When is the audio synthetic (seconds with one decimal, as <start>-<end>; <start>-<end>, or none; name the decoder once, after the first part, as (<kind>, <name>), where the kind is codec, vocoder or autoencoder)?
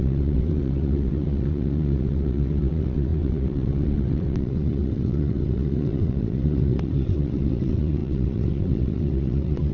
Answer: 0.0-9.7 (vocoder, WaveNeXt)